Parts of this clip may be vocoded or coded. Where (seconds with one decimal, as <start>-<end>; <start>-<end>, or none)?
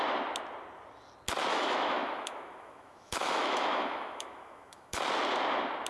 1.5-5.0